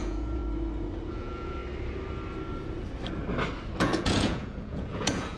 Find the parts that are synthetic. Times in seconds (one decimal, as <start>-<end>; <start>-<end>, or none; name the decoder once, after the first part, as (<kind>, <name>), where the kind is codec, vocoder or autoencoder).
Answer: 0.0-0.4 (vocoder, Vocos); 1.1-1.6; 3.8-5.4